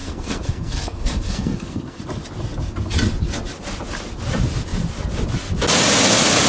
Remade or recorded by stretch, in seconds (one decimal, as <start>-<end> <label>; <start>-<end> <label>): 0.0-2.0 remade; 2.0-6.5 recorded